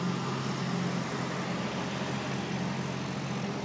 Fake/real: real